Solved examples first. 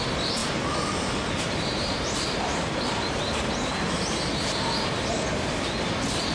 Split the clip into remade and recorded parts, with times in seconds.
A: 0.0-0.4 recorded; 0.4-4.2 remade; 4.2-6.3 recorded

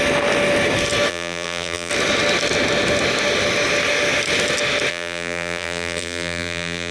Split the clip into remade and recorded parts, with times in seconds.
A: 0.0-1.1 recorded; 1.1-1.9 remade; 1.9-4.9 recorded; 4.9-6.9 remade

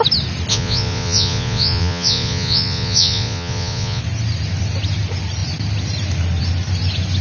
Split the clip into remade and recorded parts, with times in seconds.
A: 0.0-0.5 recorded; 0.5-4.0 remade; 4.0-7.2 recorded